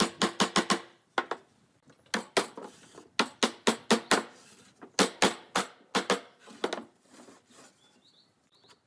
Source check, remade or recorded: recorded